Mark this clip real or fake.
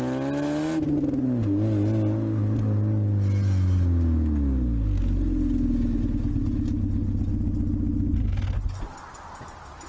real